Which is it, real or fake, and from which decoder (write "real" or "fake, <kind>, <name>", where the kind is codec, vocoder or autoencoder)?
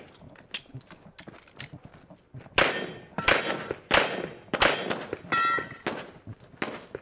real